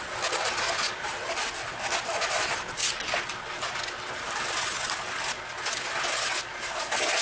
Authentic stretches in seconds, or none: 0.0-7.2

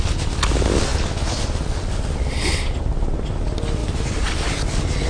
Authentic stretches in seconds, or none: 0.0-5.1